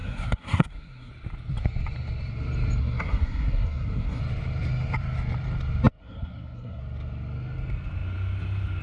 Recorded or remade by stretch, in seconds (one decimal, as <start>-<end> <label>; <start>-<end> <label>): 0.0-1.1 remade; 1.1-2.8 recorded; 2.8-4.2 remade; 4.2-6.0 recorded; 6.0-6.8 remade; 6.8-8.8 recorded